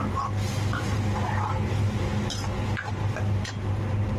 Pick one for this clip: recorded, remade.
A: recorded